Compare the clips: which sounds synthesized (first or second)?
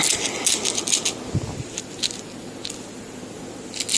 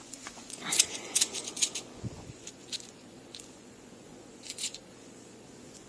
second